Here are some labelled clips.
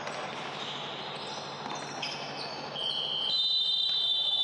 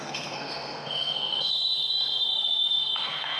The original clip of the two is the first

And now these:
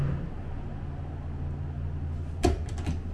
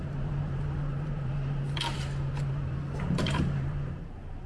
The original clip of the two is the first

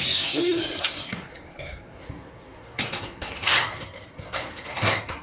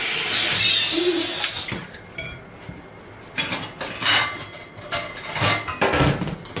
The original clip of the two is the second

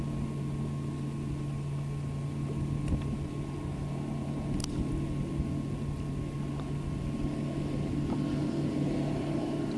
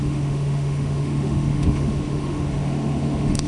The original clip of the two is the first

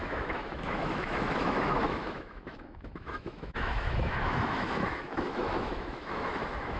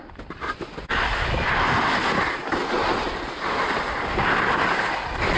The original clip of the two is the second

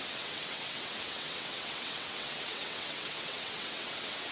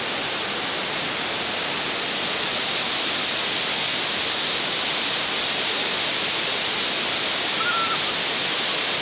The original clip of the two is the second